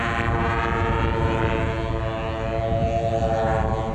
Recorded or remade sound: recorded